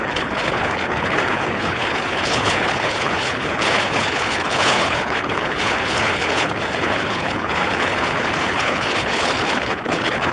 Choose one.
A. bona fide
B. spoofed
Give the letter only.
B